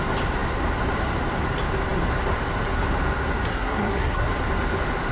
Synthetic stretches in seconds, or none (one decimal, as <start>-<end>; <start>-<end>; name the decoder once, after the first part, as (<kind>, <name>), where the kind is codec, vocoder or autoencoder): 3.5-4.3 (codec, SNAC)